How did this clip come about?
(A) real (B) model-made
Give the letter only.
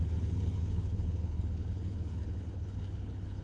B